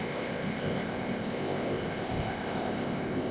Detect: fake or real fake